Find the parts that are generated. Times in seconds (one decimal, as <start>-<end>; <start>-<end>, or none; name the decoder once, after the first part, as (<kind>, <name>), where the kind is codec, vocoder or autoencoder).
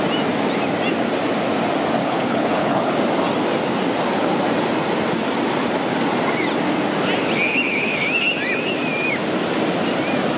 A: 2.0-2.9 (codec, HILCodec)